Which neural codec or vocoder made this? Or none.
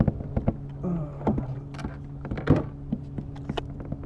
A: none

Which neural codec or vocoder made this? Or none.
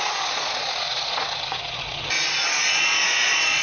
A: vocoder, Vocos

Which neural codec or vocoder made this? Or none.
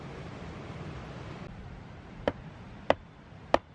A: none